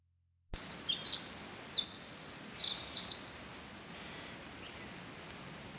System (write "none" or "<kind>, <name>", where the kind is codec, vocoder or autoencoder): none